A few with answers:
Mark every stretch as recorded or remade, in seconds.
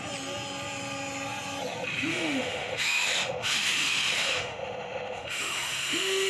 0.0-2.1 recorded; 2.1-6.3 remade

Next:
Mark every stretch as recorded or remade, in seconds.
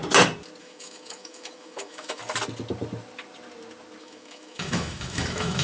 0.0-0.6 recorded; 0.6-2.2 remade; 2.2-4.0 recorded; 4.0-5.6 remade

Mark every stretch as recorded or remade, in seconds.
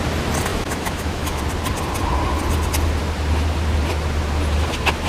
0.0-0.5 recorded; 0.5-1.4 remade; 1.4-5.1 recorded